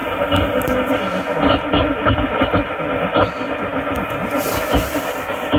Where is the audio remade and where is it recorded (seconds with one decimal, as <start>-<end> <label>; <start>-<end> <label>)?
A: 0.0-5.6 recorded